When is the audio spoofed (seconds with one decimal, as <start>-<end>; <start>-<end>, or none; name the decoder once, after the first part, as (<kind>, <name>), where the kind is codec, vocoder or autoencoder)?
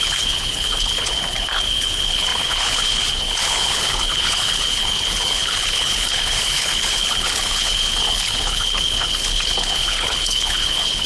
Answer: 0.0-11.1 (codec, HILCodec)